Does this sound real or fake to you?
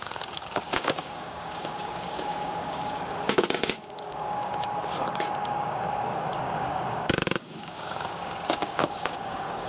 fake